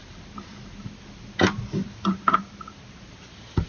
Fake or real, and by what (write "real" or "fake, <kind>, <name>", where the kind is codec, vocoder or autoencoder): real